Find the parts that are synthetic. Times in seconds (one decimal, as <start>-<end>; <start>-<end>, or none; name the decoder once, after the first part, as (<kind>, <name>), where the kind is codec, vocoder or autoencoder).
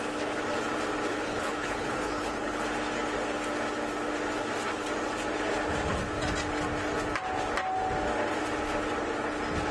1.1-2.6 (codec, HILCodec)